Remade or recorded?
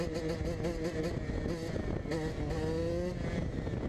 recorded